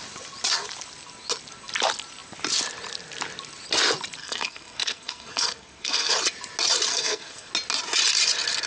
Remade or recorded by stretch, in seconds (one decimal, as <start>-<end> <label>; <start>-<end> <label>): 0.0-4.2 recorded; 4.2-6.1 remade; 6.1-6.9 recorded; 6.9-7.5 remade; 7.5-8.7 recorded